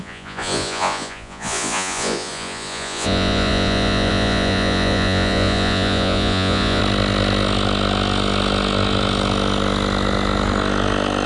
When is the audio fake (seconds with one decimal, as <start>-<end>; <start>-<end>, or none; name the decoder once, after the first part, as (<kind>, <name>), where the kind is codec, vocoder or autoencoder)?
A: 0.0-6.8 (vocoder, Vocos)